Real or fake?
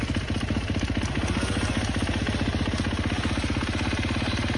real